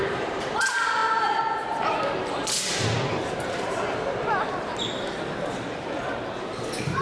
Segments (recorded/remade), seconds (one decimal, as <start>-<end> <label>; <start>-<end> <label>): 0.0-4.7 remade; 4.7-6.4 recorded; 6.4-7.0 remade